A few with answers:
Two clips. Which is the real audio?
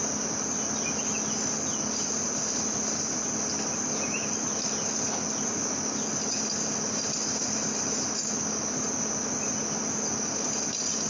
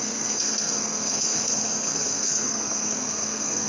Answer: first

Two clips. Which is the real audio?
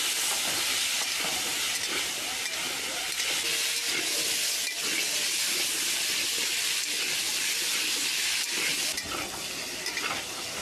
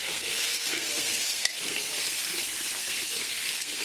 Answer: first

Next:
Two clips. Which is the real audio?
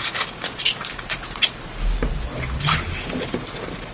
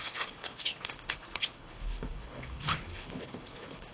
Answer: first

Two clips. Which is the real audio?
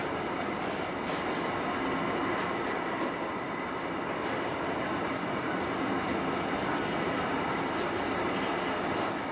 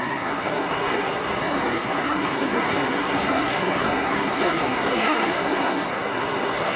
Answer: first